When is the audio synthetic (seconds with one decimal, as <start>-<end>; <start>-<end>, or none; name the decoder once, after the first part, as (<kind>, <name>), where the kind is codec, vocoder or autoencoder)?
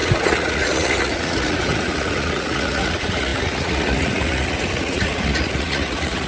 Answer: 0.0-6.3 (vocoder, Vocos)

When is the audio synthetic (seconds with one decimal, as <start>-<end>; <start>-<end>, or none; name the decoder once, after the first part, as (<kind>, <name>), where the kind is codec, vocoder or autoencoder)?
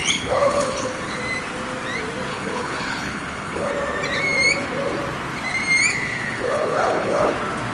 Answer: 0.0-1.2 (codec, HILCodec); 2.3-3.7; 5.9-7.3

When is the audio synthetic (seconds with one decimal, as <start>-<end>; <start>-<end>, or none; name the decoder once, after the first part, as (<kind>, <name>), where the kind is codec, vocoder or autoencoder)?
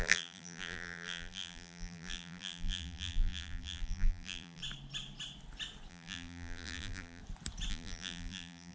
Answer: 0.0-4.6 (vocoder, BigVGAN v2); 5.9-7.2; 7.7-8.7